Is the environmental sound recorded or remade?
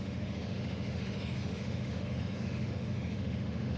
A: remade